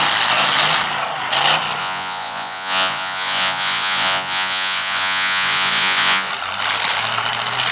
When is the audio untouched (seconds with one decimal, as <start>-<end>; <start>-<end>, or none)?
0.0-1.8; 6.3-7.7